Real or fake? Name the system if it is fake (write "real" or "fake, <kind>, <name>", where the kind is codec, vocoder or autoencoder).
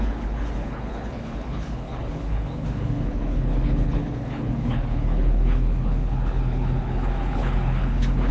fake, codec, HILCodec